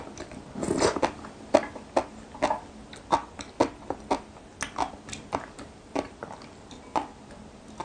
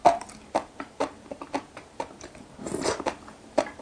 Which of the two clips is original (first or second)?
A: first